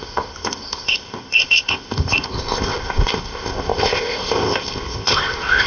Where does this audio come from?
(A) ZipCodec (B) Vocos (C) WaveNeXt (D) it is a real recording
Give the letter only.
A